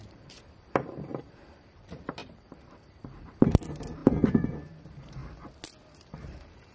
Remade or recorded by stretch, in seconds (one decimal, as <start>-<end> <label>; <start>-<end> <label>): 0.0-5.2 remade; 5.2-5.9 recorded; 5.9-6.7 remade

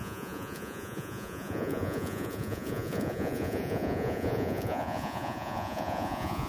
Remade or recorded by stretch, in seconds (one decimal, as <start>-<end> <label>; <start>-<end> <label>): 0.0-6.5 remade

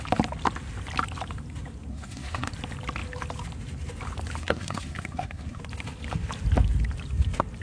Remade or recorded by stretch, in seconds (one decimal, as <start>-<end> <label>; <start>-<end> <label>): 0.0-1.9 recorded; 1.9-2.5 remade; 2.5-4.4 recorded; 4.4-5.6 remade; 5.6-7.6 recorded

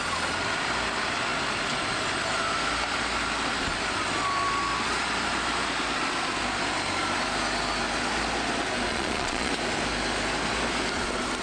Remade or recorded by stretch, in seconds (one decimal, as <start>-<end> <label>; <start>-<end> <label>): 0.0-8.9 recorded; 8.9-9.5 remade; 9.5-11.4 recorded

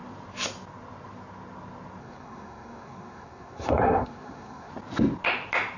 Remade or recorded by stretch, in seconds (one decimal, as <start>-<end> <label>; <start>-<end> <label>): 0.0-2.0 recorded; 2.0-4.7 remade; 4.7-5.8 recorded